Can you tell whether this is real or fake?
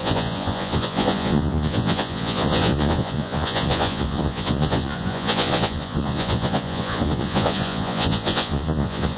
fake